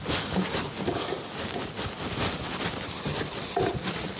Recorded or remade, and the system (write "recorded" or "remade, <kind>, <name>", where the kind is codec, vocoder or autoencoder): recorded